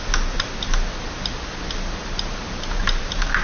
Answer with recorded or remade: recorded